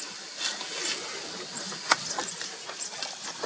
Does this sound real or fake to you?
real